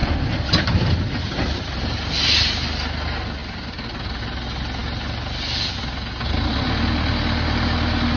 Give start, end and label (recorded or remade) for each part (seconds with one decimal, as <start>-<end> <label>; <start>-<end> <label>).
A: 0.0-8.2 recorded